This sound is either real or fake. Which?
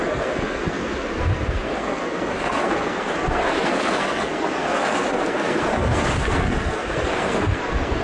fake